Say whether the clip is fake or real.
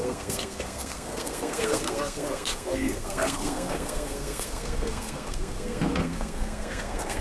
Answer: fake